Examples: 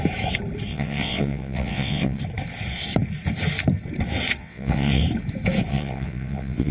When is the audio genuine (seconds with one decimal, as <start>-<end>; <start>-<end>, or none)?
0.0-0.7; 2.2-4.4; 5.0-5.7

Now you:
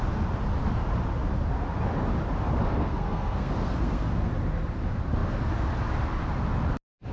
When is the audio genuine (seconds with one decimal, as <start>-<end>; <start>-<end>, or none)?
0.0-2.8; 4.3-7.1

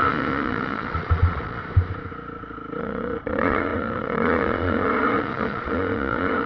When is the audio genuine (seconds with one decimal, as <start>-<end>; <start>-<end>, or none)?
1.6-2.8

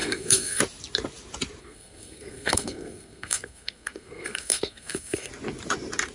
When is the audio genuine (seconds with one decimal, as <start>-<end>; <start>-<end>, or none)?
0.6-1.6; 5.3-6.1

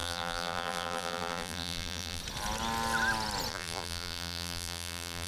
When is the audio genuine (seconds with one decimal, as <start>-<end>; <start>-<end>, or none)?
2.2-3.5

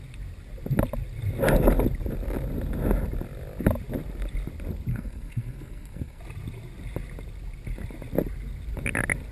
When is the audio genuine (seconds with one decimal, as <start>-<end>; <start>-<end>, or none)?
0.0-4.9; 6.2-9.3